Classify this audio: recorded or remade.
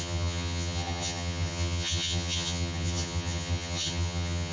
remade